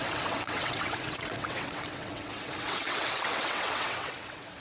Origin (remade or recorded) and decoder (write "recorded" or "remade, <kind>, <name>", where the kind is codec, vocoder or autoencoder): remade, vocoder, WaveNeXt